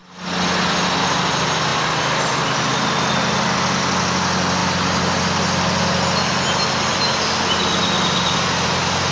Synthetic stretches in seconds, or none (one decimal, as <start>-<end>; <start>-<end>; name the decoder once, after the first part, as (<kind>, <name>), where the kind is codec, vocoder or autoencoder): none